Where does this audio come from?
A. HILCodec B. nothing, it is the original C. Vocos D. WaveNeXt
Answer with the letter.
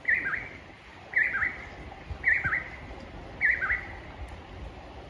B